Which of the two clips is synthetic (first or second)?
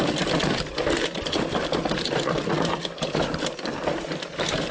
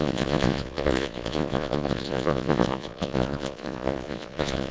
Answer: second